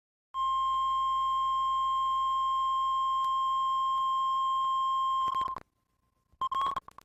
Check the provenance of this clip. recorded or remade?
recorded